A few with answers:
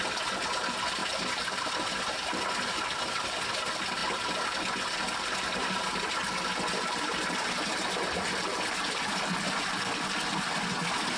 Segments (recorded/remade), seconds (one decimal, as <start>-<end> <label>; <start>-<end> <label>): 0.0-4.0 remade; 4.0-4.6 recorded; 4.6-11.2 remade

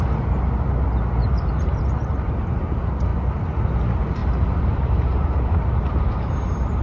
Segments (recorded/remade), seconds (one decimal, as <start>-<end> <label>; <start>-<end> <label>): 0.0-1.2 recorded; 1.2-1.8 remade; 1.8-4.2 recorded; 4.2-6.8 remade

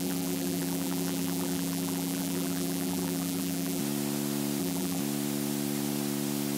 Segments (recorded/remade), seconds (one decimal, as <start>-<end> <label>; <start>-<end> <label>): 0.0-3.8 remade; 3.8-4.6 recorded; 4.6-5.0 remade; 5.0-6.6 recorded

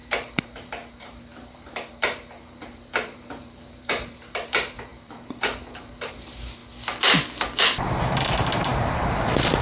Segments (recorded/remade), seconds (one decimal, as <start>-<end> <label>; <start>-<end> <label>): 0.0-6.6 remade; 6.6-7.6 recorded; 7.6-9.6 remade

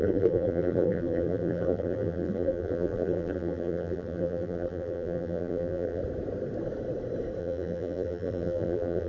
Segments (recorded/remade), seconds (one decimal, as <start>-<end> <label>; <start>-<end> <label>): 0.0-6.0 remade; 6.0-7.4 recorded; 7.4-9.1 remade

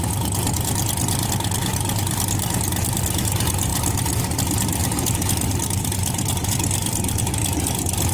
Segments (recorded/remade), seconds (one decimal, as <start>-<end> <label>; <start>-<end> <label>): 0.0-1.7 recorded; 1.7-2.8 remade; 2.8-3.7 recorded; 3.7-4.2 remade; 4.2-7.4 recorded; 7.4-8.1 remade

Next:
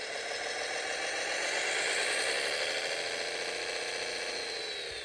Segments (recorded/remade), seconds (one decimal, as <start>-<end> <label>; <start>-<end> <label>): 0.0-5.0 recorded

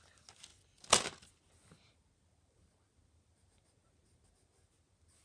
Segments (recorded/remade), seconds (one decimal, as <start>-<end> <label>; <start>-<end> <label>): 0.0-5.2 recorded